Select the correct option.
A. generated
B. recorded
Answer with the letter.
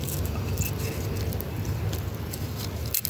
B